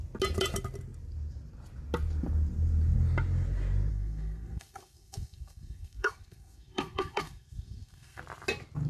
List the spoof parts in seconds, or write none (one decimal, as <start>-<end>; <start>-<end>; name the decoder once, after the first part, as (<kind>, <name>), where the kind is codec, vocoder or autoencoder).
3.9-8.2 (codec, SNAC)